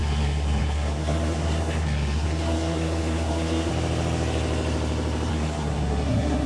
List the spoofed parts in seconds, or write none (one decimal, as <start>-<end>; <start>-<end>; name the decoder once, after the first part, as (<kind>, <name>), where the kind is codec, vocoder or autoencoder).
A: 0.0-3.7 (codec, SNAC); 5.3-6.5